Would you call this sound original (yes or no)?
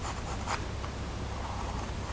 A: yes